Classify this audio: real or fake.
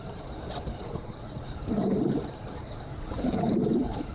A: fake